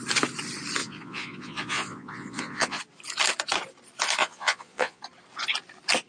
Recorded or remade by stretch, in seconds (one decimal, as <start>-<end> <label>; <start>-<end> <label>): 0.0-0.8 recorded; 0.8-2.8 remade; 2.8-4.2 recorded; 4.2-5.0 remade; 5.0-6.1 recorded